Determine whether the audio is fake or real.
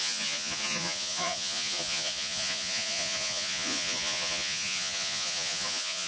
fake